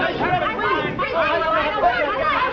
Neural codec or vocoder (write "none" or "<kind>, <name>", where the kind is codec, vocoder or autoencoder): none